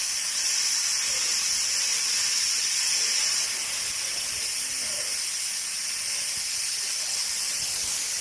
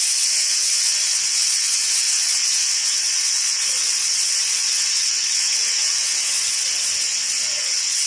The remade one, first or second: second